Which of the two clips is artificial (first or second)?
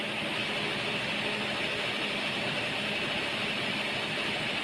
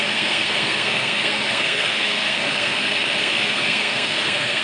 second